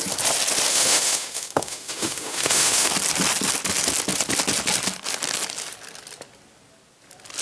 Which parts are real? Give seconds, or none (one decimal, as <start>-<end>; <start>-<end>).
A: 0.0-0.7; 2.9-7.4